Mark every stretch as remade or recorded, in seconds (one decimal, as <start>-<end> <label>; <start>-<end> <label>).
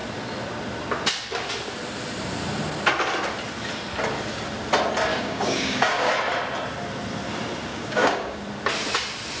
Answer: 0.0-5.1 recorded; 5.1-6.1 remade; 6.1-7.7 recorded; 7.7-8.4 remade; 8.4-9.4 recorded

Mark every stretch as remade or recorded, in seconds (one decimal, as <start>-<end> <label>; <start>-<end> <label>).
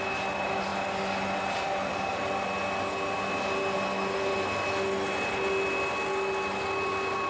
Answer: 0.0-7.3 recorded